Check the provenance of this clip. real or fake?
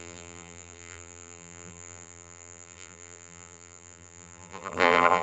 fake